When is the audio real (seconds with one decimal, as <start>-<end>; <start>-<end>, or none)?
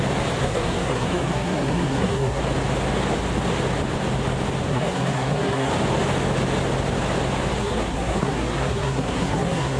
0.0-0.4; 2.4-4.7; 5.7-7.6